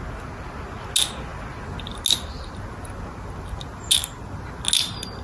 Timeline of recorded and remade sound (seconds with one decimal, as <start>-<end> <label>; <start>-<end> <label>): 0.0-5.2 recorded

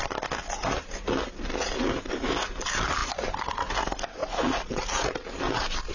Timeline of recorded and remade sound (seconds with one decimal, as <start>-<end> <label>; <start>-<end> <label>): 0.0-5.9 recorded

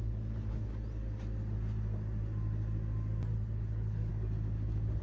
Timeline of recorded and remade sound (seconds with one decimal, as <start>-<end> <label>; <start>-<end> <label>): 0.0-0.7 remade; 0.7-3.3 recorded; 3.3-4.1 remade; 4.1-5.0 recorded

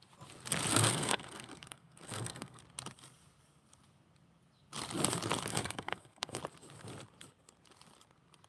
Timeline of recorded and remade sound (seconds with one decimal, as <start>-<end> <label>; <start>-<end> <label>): 0.0-0.7 recorded; 0.7-2.6 remade; 2.6-5.5 recorded; 5.5-6.4 remade; 6.4-8.5 recorded